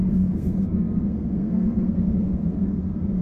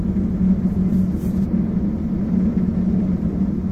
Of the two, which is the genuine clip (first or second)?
second